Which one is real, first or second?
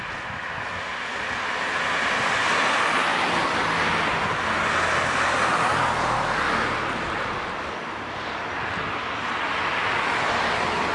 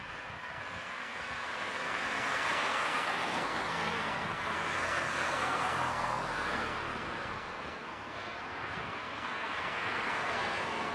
first